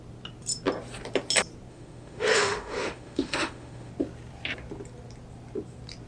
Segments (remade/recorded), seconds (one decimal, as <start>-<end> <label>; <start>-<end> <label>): 0.0-1.7 recorded; 1.7-3.9 remade; 3.9-6.1 recorded